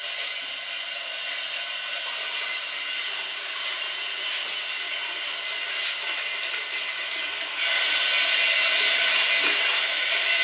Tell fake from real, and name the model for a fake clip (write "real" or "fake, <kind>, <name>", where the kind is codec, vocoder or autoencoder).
real